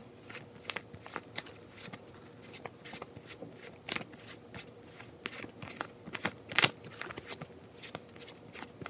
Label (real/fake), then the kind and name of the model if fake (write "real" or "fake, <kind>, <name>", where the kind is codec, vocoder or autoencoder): real